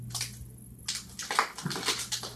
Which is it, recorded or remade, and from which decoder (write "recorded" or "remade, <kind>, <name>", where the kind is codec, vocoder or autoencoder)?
recorded